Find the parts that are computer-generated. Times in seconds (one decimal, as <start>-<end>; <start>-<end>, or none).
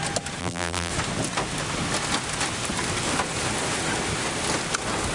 0.4-0.9